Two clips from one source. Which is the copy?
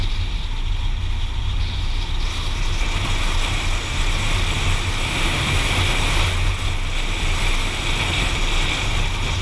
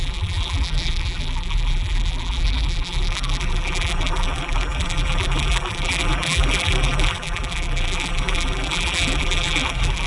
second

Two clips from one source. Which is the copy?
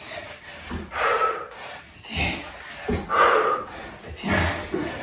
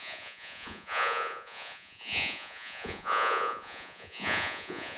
second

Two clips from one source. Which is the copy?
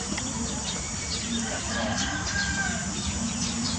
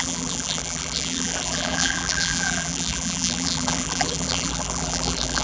second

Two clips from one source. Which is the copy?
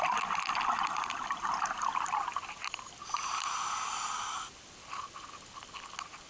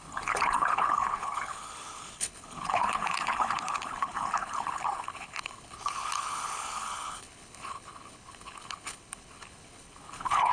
second